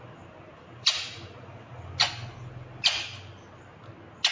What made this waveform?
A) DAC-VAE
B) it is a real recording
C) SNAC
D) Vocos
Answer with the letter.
B